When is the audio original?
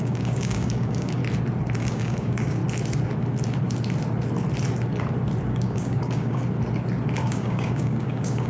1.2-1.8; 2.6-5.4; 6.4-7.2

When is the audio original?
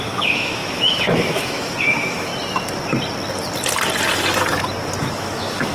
2.3-5.0